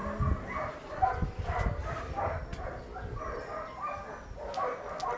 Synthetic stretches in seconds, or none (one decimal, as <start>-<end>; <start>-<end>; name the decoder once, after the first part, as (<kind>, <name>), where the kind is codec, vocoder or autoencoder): none